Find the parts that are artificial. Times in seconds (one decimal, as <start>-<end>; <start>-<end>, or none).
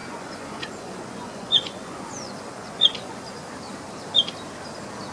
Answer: 0.0-3.4